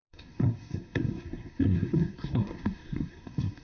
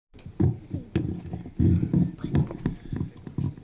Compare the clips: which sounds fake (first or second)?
first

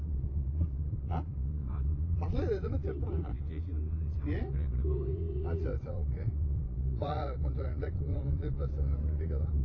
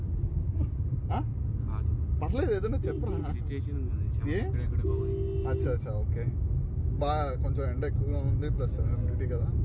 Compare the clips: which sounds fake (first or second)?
first